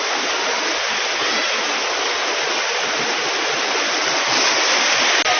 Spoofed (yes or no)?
no